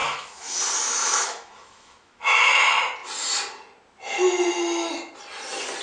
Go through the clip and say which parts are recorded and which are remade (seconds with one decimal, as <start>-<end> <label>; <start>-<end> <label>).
0.0-0.6 remade; 0.6-1.0 recorded; 1.0-2.5 remade; 2.5-5.8 recorded